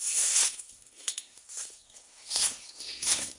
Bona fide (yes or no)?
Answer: no